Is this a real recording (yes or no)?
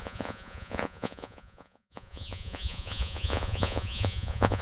no